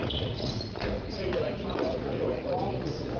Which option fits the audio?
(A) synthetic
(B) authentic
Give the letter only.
A